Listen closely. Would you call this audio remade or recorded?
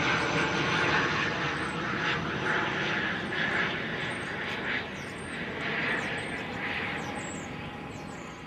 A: recorded